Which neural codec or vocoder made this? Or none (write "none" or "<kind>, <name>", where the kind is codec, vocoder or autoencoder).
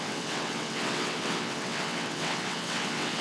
vocoder, WaveNeXt